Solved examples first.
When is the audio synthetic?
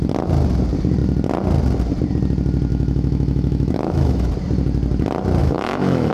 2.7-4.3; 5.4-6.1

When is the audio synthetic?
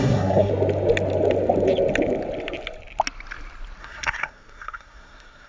0.0-0.5; 3.8-5.5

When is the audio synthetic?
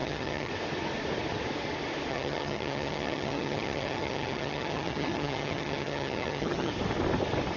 0.0-0.5; 2.1-6.7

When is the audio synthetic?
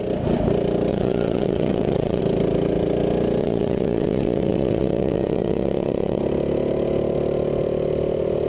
0.9-2.2; 3.4-6.2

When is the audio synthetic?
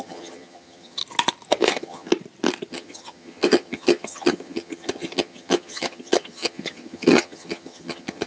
0.0-1.0; 1.7-2.1; 2.7-8.3